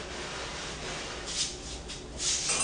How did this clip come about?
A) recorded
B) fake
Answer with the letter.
A